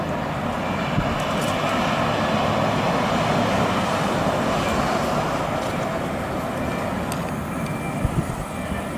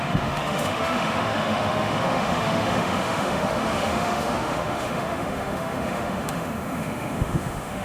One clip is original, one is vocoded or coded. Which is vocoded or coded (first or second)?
second